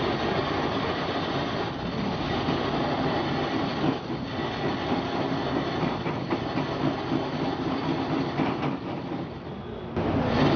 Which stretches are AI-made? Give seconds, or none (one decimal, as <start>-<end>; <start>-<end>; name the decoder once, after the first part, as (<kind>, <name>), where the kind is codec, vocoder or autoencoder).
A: none